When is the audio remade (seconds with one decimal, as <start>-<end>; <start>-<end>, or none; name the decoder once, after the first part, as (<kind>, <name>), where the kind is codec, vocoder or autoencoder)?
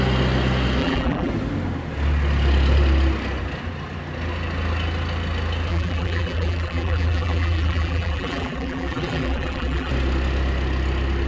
0.8-1.3 (vocoder, BigVGAN v2); 5.7-9.9